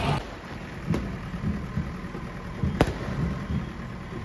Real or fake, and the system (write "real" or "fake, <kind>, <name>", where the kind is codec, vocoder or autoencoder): real